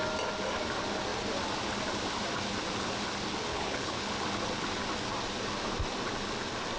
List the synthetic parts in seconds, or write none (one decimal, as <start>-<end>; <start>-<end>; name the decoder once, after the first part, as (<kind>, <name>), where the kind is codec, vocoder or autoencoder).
3.5-4.1 (codec, HILCodec)

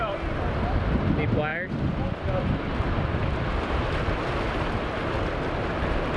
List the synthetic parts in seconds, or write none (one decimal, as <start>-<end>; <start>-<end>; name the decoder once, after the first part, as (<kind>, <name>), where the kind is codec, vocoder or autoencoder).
none

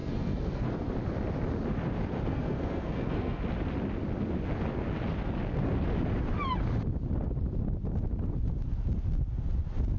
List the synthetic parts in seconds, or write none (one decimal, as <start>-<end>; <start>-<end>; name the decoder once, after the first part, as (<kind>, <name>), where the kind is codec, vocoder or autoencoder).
0.0-0.9 (codec, SNAC); 2.3-3.4

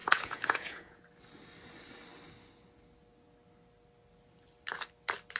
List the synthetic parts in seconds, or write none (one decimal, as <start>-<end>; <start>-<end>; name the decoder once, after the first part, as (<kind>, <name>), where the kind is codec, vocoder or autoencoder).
0.0-1.0 (vocoder, Vocos)

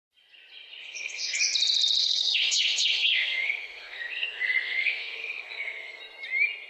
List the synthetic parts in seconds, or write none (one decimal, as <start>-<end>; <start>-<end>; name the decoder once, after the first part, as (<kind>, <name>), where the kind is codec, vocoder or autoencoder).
0.8-1.4 (codec, SNAC); 2.0-6.0

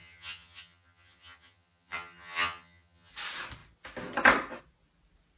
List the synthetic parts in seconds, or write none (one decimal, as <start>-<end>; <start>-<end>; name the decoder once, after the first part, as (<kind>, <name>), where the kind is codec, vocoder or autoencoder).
0.0-3.1 (vocoder, HiFi-GAN)

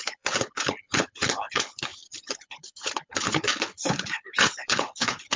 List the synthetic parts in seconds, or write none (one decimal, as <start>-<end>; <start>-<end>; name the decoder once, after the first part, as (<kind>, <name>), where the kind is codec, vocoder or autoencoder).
0.0-5.4 (codec, HILCodec)